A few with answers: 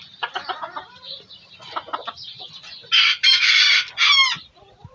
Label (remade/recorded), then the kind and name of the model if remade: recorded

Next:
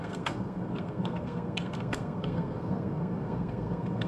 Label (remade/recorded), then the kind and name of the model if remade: remade, codec, SNAC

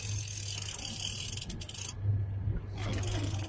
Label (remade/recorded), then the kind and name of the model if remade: recorded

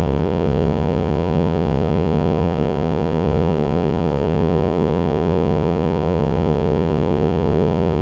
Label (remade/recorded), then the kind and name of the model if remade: remade, vocoder, Vocos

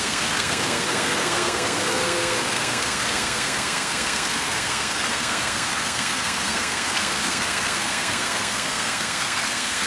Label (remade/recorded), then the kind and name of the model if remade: remade, codec, SNAC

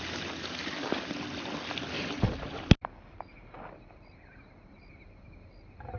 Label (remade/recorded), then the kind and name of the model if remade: recorded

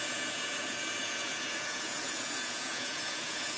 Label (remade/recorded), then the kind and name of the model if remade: remade, vocoder, Vocos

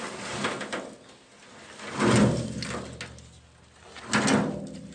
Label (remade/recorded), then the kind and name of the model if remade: recorded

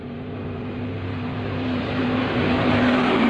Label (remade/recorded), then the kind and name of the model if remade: remade, vocoder, BigVGAN v2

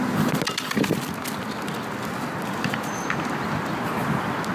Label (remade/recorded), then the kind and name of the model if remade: recorded